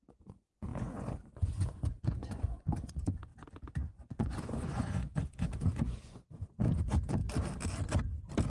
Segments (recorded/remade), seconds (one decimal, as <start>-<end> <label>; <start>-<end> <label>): 0.0-3.3 remade; 3.3-3.9 recorded; 3.9-7.2 remade; 7.2-8.5 recorded